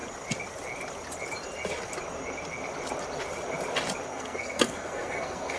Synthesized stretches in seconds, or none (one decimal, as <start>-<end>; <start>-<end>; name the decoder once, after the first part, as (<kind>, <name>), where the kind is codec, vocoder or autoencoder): 4.1-5.6 (codec, SNAC)